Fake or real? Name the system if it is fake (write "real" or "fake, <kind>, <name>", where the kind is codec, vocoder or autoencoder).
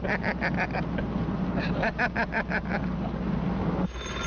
real